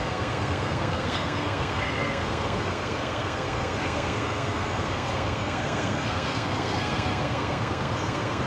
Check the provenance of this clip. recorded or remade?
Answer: remade